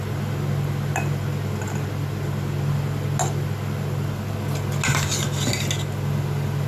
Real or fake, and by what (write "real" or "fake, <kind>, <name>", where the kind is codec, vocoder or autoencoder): real